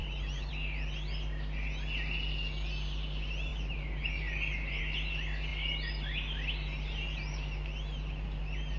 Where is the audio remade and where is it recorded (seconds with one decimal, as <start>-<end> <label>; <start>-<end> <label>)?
0.0-0.5 remade; 0.5-3.5 recorded; 3.5-4.8 remade; 4.8-8.8 recorded